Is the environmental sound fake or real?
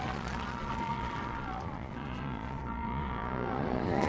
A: fake